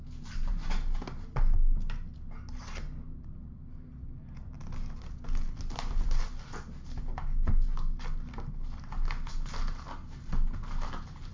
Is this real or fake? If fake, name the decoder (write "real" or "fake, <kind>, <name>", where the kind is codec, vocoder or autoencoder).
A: real